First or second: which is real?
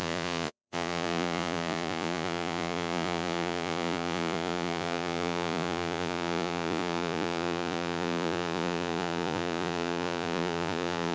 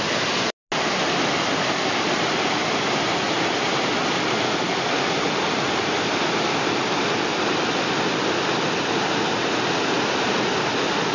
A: second